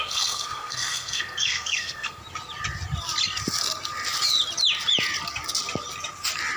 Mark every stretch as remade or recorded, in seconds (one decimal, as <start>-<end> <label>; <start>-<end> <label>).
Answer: 0.0-2.2 remade; 2.2-6.6 recorded